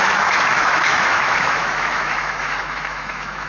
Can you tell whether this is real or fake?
fake